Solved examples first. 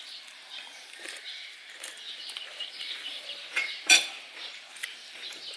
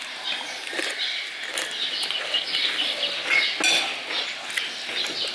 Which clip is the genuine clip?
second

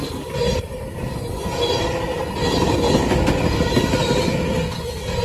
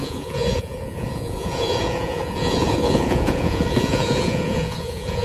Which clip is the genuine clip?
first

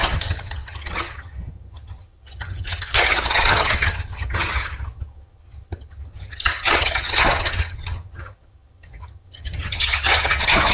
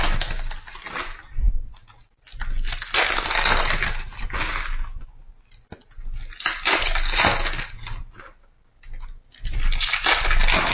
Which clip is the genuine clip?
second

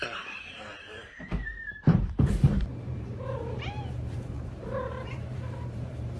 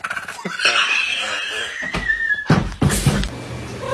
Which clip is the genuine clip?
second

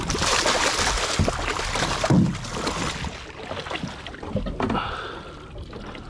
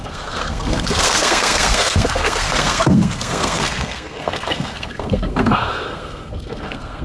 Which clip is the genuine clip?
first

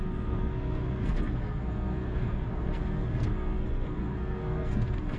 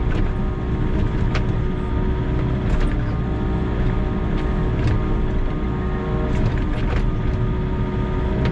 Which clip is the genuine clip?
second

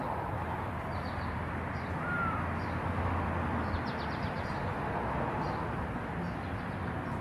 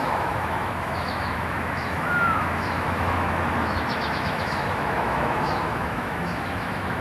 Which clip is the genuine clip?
first